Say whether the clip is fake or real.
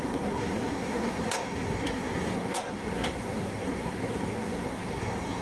fake